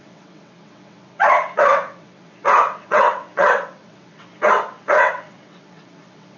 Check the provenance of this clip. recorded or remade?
remade